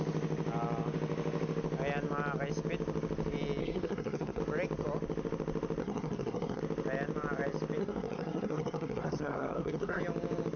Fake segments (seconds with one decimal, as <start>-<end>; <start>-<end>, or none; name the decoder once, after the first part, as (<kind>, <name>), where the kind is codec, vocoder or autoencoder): 3.6-4.4 (codec, SNAC); 5.8-6.6; 7.8-10.0